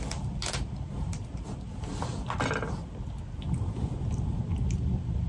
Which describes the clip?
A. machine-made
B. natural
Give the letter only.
B